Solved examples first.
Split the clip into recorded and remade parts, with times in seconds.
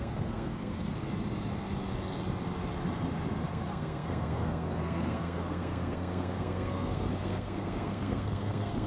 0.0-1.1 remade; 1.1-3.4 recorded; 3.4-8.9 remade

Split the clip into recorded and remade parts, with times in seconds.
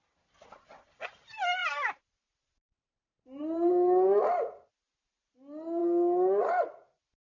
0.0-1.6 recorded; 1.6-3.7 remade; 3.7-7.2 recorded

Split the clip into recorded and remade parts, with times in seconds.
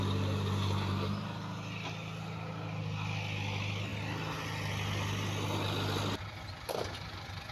0.0-7.5 recorded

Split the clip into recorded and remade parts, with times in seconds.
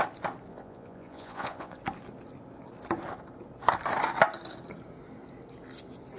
0.0-0.5 recorded; 0.5-1.8 remade; 1.8-6.2 recorded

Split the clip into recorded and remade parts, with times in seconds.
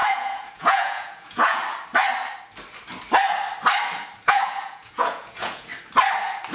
0.0-1.6 remade; 1.6-4.3 recorded; 4.3-5.7 remade; 5.7-6.5 recorded